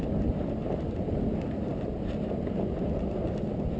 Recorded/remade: recorded